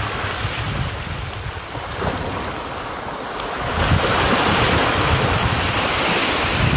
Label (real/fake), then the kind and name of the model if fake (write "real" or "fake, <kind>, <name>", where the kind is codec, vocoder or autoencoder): real